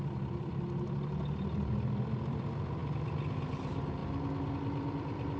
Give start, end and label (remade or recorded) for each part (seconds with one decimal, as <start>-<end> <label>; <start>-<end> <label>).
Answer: 0.0-2.8 remade; 2.8-3.5 recorded; 3.5-5.4 remade

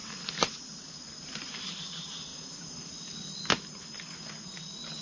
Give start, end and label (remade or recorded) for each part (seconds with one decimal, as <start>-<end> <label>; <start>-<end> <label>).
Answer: 0.0-0.8 remade; 0.8-2.3 recorded; 2.3-2.9 remade; 2.9-5.0 recorded